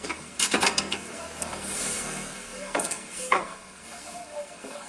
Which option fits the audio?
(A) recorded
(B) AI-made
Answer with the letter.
B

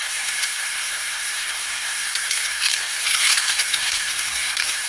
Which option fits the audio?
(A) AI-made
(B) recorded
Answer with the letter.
A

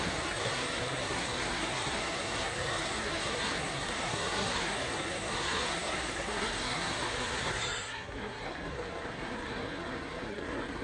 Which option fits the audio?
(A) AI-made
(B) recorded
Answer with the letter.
A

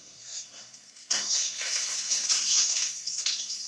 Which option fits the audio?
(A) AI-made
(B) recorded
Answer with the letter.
A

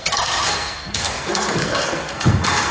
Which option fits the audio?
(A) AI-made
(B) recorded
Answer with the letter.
A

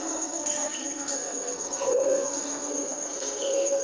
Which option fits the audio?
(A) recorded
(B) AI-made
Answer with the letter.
B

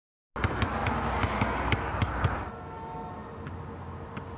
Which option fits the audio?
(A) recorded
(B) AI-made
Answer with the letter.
A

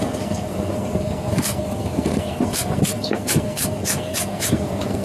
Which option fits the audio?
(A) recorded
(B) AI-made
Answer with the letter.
B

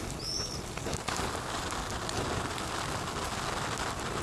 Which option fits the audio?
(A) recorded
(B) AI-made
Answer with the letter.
A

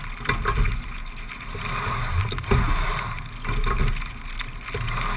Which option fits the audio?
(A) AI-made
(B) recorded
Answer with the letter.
B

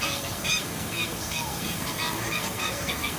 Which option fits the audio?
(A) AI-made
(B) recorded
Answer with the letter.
A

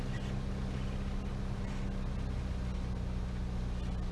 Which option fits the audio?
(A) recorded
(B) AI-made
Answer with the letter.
A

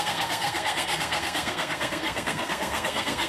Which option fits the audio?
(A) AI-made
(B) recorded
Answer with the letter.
A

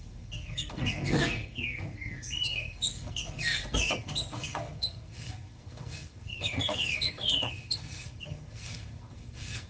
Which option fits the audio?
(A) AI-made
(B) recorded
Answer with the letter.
A